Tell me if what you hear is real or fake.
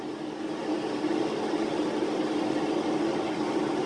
real